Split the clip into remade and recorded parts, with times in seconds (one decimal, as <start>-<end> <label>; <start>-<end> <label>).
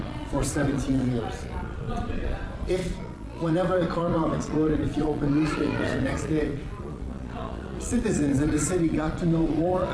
0.0-9.9 remade